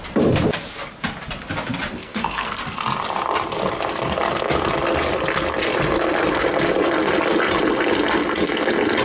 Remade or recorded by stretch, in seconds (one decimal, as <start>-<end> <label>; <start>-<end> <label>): 0.0-2.0 recorded; 2.0-2.6 remade; 2.6-9.0 recorded